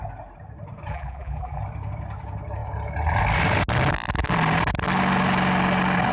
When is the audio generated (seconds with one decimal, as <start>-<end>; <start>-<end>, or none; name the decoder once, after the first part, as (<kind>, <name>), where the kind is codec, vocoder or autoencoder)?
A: 0.9-1.6 (vocoder, BigVGAN v2)